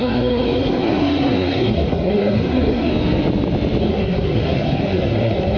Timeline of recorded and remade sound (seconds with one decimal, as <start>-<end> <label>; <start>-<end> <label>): 0.0-2.9 remade; 2.9-3.8 recorded; 3.8-5.6 remade